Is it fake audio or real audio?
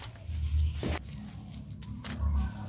real